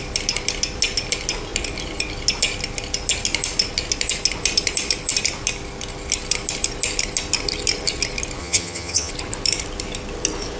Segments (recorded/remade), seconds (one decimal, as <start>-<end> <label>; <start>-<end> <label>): 0.0-8.4 recorded; 8.4-9.1 remade; 9.1-10.6 recorded